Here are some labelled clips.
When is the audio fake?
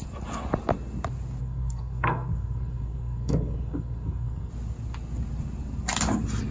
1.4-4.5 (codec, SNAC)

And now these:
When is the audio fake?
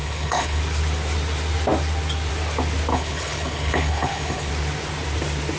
0.0-0.6 (codec, HILCodec); 2.9-4.5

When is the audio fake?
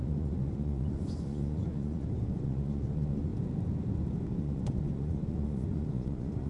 0.0-3.3 (vocoder, Vocos); 4.4-6.5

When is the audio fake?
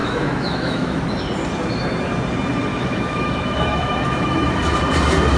0.0-1.0 (autoencoder, DAC-VAE); 2.7-4.6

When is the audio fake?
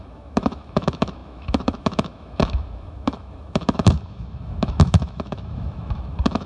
0.0-6.5 (autoencoder, DAC-VAE)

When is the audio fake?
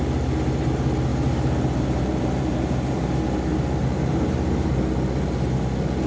1.1-3.1 (vocoder, BigVGAN v2); 3.8-4.7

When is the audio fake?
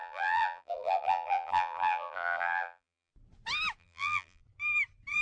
0.0-3.1 (vocoder, BigVGAN v2); 3.8-4.4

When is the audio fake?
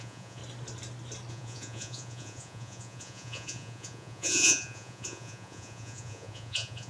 0.0-0.4 (vocoder, Vocos); 1.3-6.9